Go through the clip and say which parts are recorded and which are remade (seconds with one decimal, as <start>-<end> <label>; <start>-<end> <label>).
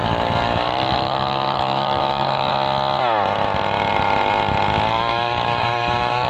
0.0-2.5 remade; 2.5-4.9 recorded; 4.9-6.3 remade